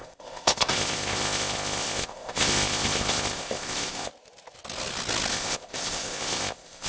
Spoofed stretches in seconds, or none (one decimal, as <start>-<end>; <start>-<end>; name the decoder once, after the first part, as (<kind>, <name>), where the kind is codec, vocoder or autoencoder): 0.0-4.1 (codec, ZipCodec); 5.3-6.9